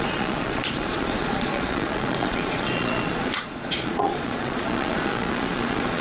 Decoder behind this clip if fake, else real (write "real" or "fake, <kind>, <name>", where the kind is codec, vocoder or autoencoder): fake, vocoder, Vocos